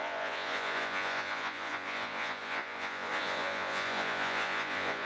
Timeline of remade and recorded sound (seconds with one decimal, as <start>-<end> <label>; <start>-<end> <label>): 0.0-5.0 remade